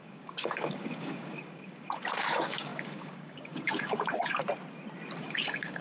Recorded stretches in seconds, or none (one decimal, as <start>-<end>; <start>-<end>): 4.4-5.2